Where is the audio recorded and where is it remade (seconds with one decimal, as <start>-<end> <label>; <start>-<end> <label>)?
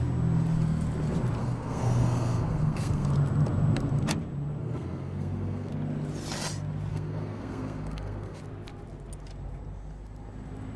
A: 0.0-1.4 recorded; 1.4-3.1 remade; 3.1-4.6 recorded; 4.6-5.7 remade; 5.7-6.9 recorded; 6.9-8.4 remade; 8.4-10.8 recorded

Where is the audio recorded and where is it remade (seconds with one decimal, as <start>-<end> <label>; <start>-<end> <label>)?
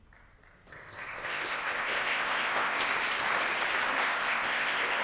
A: 0.0-0.7 recorded; 0.7-2.9 remade; 2.9-4.0 recorded; 4.0-5.0 remade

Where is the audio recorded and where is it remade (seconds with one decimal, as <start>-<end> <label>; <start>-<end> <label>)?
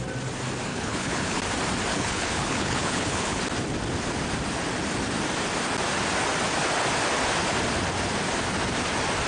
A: 0.0-0.7 recorded; 0.7-1.4 remade; 1.4-1.9 recorded; 1.9-3.4 remade; 3.4-9.3 recorded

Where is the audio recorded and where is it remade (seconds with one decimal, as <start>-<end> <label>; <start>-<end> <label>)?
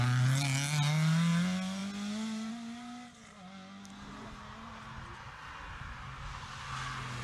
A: 0.0-7.2 recorded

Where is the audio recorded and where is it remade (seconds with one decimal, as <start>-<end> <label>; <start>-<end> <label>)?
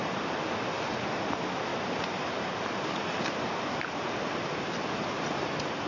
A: 0.0-1.7 recorded; 1.7-5.2 remade; 5.2-5.9 recorded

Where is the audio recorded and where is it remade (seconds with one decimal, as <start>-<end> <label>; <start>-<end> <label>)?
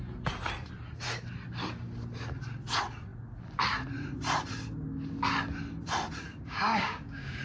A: 0.0-6.3 recorded; 6.3-7.4 remade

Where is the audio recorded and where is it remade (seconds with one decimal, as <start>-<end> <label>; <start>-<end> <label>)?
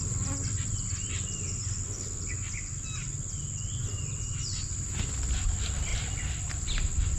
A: 0.0-7.2 recorded